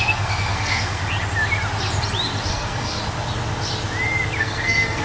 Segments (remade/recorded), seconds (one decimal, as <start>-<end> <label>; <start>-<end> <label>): 0.0-1.0 remade; 1.0-2.5 recorded; 2.5-3.0 remade; 3.0-4.4 recorded; 4.4-5.0 remade